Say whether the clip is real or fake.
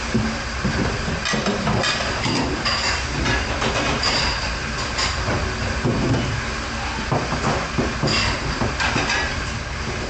real